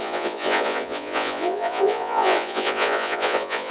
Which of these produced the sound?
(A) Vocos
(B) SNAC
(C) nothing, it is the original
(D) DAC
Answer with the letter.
A